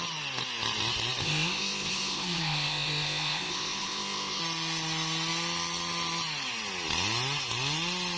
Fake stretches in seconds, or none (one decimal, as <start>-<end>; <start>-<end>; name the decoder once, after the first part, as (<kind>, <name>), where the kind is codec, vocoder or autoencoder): 1.2-4.4 (codec, ZipCodec)